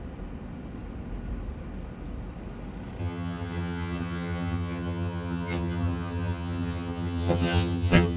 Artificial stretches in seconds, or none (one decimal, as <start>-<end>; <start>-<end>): 3.0-8.2